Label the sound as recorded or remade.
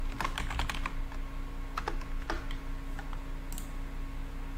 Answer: recorded